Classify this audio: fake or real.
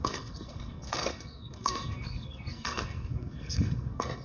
fake